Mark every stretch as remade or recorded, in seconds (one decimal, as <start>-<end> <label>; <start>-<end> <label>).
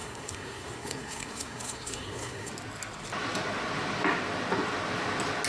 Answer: 0.0-2.5 remade; 2.5-5.5 recorded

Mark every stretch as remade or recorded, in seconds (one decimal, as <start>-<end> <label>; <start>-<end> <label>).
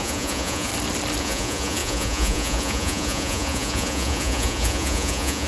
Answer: 0.0-0.7 remade; 0.7-1.2 recorded; 1.2-5.5 remade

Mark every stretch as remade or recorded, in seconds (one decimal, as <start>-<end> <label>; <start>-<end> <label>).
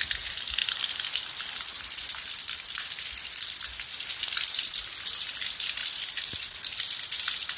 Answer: 0.0-0.6 recorded; 0.6-3.0 remade; 3.0-7.6 recorded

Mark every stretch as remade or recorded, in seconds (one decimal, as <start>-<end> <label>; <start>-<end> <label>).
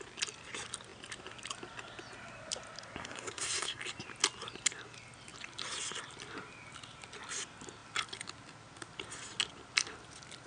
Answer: 0.0-3.0 recorded; 3.0-3.8 remade; 3.8-10.5 recorded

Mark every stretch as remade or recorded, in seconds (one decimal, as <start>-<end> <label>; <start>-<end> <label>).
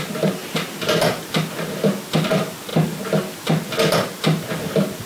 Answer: 0.0-0.4 recorded; 0.4-1.3 remade; 1.3-5.1 recorded